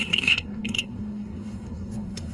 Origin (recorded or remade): remade